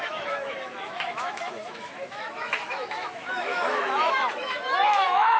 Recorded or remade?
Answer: remade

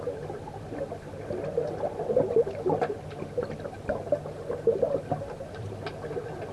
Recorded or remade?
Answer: recorded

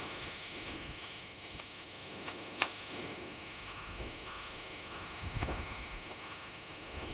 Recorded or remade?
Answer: remade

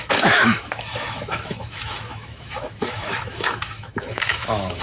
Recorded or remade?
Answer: remade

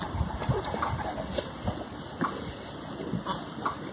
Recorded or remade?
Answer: recorded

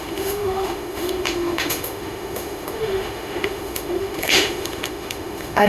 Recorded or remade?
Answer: remade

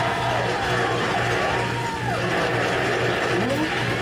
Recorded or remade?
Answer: recorded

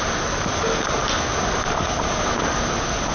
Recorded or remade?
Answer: recorded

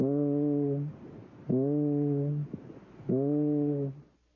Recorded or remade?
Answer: recorded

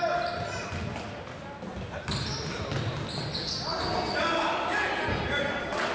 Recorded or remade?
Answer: recorded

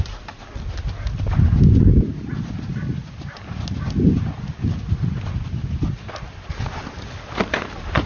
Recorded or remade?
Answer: recorded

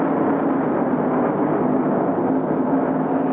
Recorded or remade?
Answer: recorded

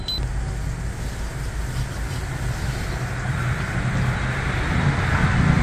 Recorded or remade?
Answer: recorded